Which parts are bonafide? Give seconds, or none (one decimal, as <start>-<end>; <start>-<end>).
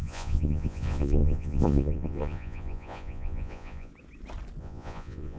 3.9-4.6